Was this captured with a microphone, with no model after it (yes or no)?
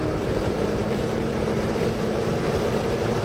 no